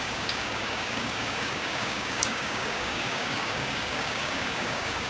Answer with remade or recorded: remade